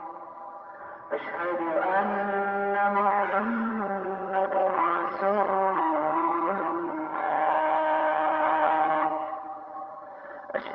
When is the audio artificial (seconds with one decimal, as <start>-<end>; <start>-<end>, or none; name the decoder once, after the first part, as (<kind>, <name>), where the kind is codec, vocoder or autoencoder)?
0.0-0.8 (vocoder, HiFi-GAN); 3.0-10.7